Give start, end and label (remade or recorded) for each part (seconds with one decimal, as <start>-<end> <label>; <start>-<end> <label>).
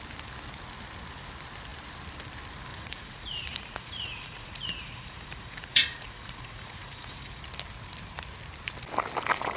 0.0-2.7 recorded; 2.7-7.4 remade; 7.4-9.6 recorded